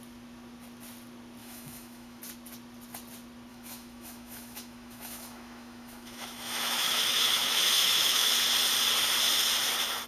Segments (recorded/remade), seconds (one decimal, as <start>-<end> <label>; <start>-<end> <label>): 0.0-1.4 recorded; 1.4-2.2 remade; 2.2-3.5 recorded; 3.5-8.3 remade; 8.3-10.1 recorded